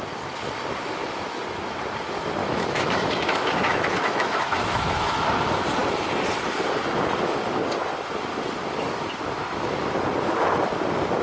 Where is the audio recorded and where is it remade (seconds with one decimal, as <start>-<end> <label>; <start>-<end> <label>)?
0.0-2.4 recorded; 2.4-5.3 remade; 5.3-11.2 recorded